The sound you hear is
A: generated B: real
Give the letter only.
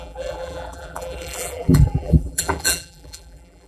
A